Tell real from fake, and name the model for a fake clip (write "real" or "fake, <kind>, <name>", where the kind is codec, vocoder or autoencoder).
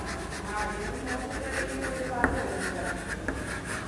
real